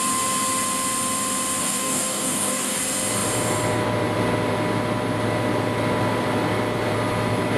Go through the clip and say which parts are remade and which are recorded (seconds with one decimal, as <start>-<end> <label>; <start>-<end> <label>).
0.0-1.6 recorded; 1.6-2.8 remade; 2.8-7.6 recorded